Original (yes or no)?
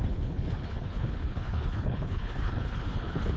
no